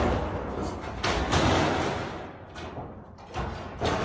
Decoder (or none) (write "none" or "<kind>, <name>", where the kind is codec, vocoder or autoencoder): none